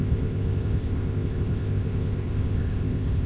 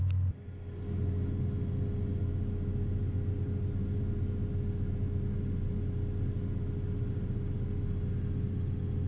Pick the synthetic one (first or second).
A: first